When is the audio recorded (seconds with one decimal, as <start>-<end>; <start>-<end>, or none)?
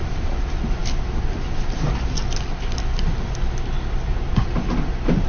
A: 0.0-5.3